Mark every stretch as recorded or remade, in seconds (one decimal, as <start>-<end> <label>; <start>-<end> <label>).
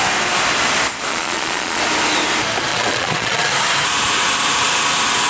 0.0-1.1 recorded; 1.1-1.8 remade; 1.8-2.7 recorded; 2.7-3.5 remade; 3.5-5.3 recorded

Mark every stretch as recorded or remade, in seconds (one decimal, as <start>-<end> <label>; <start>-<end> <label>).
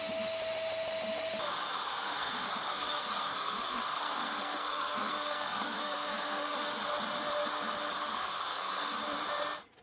0.0-1.7 recorded; 1.7-6.8 remade; 6.8-8.0 recorded; 8.0-9.0 remade; 9.0-9.8 recorded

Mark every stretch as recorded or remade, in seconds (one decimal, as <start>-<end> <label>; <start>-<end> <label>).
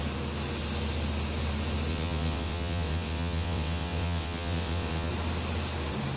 0.0-1.9 recorded; 1.9-5.1 remade; 5.1-6.2 recorded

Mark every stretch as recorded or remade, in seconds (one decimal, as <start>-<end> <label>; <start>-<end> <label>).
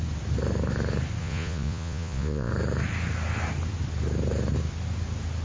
0.0-1.2 recorded; 1.2-2.5 remade; 2.5-5.4 recorded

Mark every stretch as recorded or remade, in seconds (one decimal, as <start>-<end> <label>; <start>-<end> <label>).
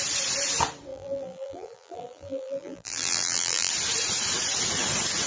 0.0-0.9 recorded; 0.9-3.7 remade; 3.7-5.3 recorded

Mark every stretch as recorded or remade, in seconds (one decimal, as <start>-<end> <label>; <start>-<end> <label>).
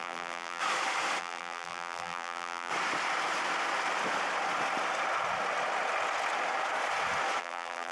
0.0-0.6 remade; 0.6-1.2 recorded; 1.2-2.7 remade; 2.7-7.4 recorded; 7.4-7.9 remade